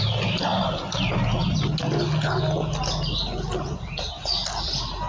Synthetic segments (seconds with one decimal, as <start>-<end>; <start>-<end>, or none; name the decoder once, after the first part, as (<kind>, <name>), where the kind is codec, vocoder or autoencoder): none